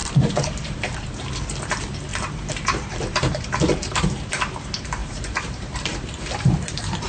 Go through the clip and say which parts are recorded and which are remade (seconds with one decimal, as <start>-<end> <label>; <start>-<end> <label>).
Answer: 0.0-1.4 remade; 1.4-2.1 recorded; 2.1-4.5 remade; 4.5-5.0 recorded; 5.0-7.1 remade